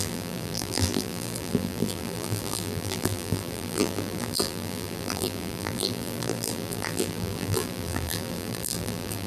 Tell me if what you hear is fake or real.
fake